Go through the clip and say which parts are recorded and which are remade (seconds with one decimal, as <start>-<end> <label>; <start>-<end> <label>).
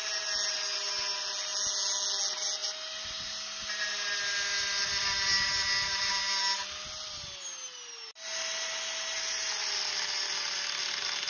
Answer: 0.0-11.3 recorded